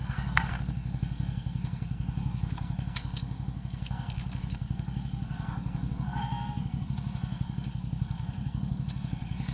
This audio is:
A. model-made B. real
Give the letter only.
A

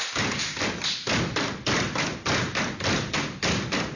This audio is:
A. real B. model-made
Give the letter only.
A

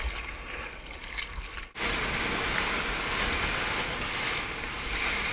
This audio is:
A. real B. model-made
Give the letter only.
A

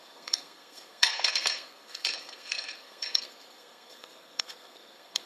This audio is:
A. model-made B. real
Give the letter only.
A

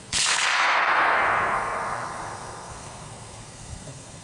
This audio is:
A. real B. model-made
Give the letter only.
B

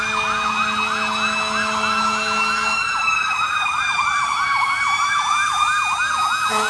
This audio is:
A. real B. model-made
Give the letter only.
A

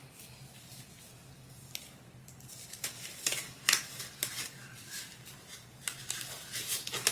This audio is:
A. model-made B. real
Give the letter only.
B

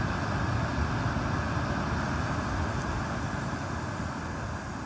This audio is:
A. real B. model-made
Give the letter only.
A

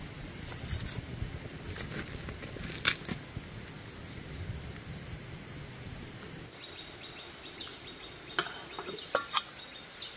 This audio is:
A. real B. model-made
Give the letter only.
A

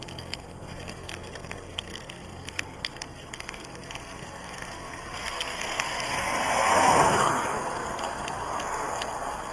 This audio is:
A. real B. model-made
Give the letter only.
B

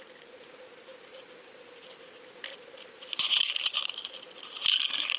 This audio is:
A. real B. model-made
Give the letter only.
A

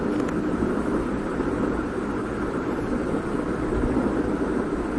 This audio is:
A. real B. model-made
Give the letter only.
A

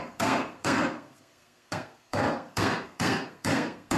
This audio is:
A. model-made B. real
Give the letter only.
A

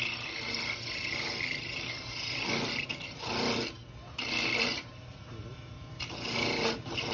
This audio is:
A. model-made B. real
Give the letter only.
B